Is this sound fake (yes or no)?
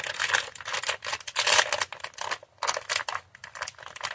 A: no